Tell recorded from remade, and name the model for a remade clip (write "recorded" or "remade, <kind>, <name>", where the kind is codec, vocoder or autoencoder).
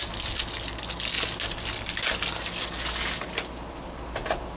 recorded